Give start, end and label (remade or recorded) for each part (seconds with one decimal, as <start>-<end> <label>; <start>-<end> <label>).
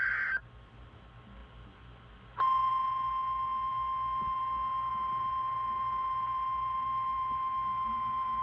0.0-4.9 recorded; 4.9-8.4 remade